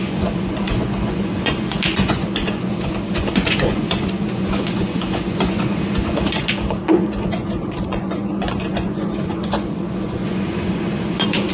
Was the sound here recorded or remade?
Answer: remade